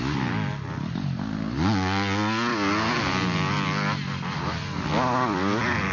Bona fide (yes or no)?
yes